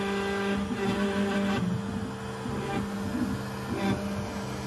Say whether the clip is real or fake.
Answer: real